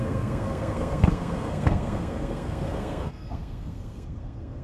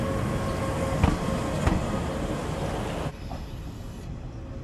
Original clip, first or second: second